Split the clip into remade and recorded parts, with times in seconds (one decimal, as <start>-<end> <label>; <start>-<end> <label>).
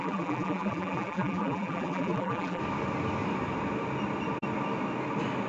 0.0-2.6 remade; 2.6-5.5 recorded